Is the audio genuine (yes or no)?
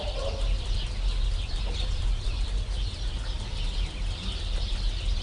yes